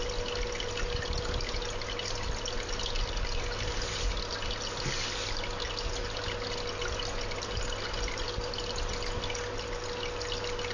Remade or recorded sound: recorded